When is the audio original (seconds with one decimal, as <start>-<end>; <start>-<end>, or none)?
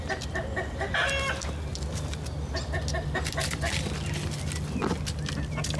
0.0-5.8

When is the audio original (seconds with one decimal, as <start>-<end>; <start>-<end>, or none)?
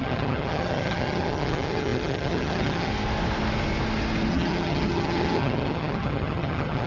2.9-4.3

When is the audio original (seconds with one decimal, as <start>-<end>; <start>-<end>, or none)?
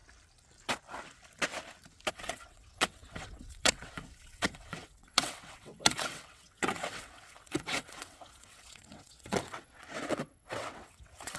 0.0-2.1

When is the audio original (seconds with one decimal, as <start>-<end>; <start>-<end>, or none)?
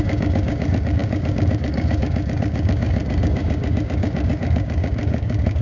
none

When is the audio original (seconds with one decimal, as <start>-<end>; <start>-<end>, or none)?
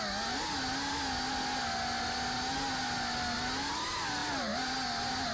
0.0-5.3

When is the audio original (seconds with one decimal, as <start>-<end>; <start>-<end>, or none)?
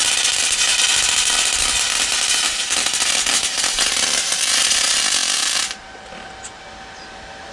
5.2-6.7